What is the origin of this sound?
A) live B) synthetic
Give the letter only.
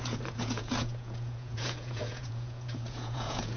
B